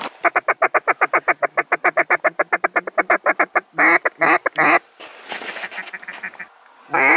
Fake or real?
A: real